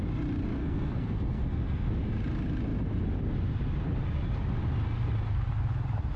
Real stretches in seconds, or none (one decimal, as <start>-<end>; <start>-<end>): 0.0-0.5; 1.9-6.2